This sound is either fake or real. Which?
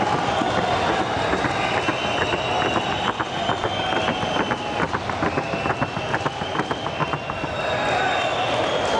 real